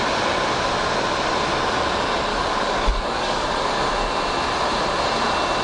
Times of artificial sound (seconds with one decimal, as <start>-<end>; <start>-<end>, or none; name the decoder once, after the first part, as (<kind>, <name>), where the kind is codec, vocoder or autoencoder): 2.3-3.5 (codec, DAC)